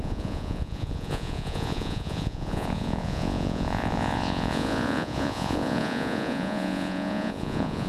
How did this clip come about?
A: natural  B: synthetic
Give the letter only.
B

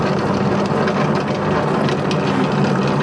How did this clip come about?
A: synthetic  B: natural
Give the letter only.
B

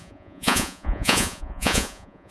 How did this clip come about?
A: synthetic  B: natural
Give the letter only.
A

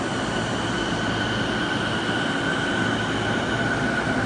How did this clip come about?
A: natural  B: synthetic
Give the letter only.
A